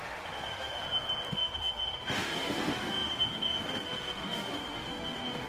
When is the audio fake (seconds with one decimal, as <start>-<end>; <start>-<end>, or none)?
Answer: 0.0-0.8; 1.3-5.5

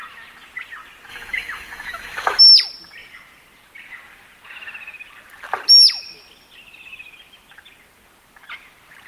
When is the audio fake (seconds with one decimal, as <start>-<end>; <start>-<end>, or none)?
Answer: 1.1-2.4

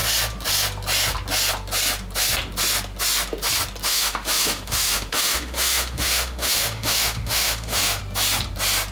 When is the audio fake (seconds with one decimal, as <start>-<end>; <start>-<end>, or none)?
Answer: 3.9-8.0

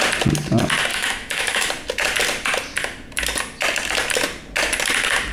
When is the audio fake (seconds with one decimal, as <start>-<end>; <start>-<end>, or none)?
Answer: 0.9-1.7

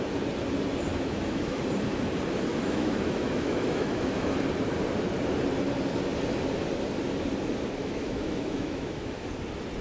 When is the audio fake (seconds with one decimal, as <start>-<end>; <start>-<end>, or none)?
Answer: 0.9-1.6; 2.5-4.3; 7.8-9.3

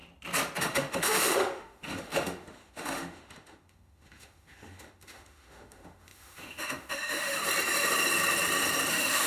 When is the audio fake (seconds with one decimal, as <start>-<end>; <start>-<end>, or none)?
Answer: 0.6-7.4; 8.9-9.3